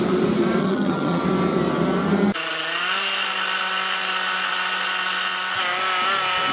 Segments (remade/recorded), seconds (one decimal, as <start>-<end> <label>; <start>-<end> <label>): 0.0-0.6 recorded; 0.6-1.2 remade; 1.2-6.5 recorded